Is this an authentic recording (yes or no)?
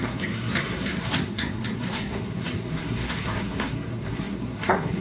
no